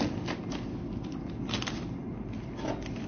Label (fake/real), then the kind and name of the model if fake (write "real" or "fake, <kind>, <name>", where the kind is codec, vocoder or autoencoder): real